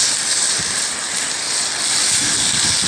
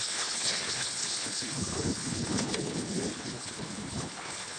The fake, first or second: second